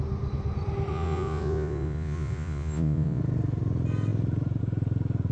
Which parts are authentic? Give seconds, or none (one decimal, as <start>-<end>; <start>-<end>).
0.0-0.9; 3.2-5.3